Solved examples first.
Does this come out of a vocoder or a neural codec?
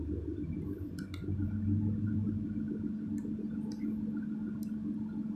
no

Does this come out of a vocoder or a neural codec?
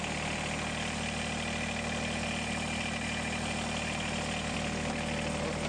no